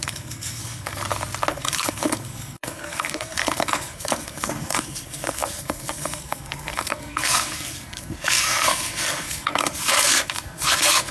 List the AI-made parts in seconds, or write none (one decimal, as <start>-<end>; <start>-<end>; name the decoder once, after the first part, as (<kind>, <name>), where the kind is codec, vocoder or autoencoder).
0.0-1.0 (codec, SNAC); 1.5-11.1